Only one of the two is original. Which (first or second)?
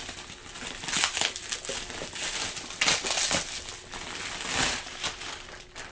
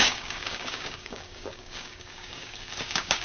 first